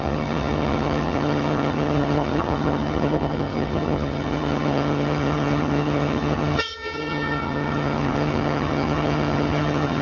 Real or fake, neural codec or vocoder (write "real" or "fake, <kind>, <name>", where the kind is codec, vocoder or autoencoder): fake, vocoder, HiFi-GAN